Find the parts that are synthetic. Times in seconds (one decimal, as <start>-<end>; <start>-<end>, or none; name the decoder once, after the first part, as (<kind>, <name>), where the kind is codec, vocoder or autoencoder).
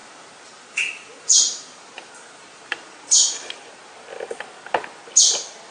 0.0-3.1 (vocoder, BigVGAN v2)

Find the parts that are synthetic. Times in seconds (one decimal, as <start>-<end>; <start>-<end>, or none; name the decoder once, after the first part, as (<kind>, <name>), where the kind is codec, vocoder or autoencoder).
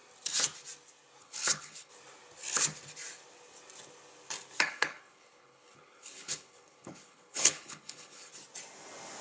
1.2-1.9 (codec, HILCodec); 4.6-8.3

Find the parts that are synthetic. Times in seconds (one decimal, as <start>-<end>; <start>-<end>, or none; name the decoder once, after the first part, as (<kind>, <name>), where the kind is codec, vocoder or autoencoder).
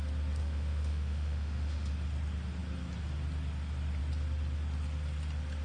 0.4-1.9 (autoencoder, DAC-VAE)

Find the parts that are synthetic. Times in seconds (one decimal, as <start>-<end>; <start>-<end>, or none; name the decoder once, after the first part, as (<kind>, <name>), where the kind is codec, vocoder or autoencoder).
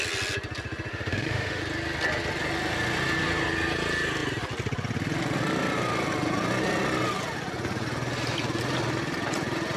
0.9-1.6 (autoencoder, DAC-VAE)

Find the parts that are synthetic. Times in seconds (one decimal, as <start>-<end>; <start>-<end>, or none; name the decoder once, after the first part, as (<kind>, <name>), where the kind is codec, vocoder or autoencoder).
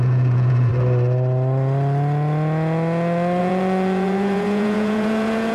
0.0-0.7 (vocoder, Vocos); 3.4-5.5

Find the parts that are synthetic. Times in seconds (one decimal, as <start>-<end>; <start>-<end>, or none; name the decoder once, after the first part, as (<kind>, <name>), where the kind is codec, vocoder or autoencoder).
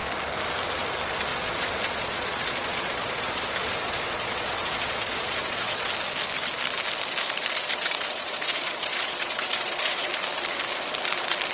1.3-5.9 (vocoder, Vocos); 7.6-10.1